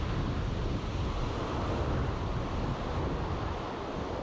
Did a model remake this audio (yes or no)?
no